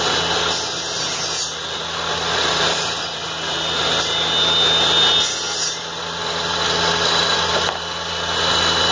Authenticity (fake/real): real